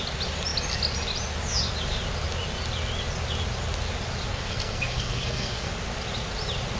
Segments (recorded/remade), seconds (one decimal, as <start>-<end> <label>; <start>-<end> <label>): 0.0-4.3 recorded; 4.3-5.7 remade; 5.7-6.8 recorded